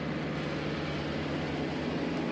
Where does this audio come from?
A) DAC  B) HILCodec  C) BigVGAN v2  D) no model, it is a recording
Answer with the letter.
D